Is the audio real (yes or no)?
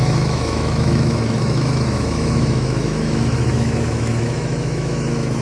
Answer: no